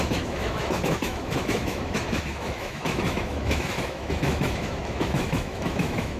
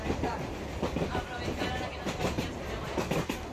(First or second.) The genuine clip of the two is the second